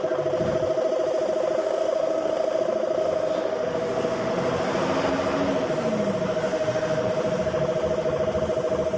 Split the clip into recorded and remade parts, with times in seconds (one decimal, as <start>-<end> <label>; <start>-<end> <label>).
0.0-1.6 recorded; 1.6-2.6 remade; 2.6-3.0 recorded; 3.0-4.3 remade; 4.3-6.5 recorded; 6.5-7.1 remade; 7.1-9.0 recorded